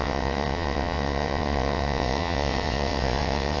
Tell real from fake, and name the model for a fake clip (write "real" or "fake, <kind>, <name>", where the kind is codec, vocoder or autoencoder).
fake, vocoder, WaveNeXt